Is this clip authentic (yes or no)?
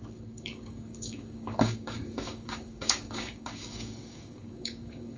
no